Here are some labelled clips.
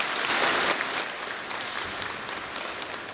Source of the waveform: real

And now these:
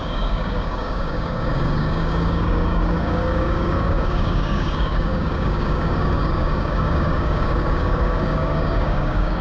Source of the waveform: fake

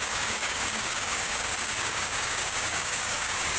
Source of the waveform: fake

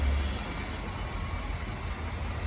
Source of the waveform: real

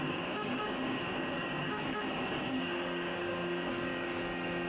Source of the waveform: fake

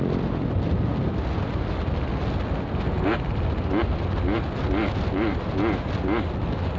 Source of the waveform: real